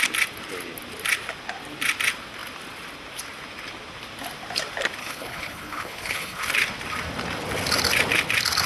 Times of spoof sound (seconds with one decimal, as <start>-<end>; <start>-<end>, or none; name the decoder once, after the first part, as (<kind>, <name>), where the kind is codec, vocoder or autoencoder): 5.0-6.4 (codec, HILCodec)